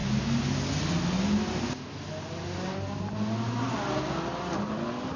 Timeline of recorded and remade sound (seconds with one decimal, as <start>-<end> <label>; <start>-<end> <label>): 0.0-5.2 recorded